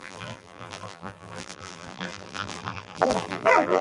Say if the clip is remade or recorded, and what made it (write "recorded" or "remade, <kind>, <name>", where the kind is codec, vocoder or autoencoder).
remade, vocoder, BigVGAN v2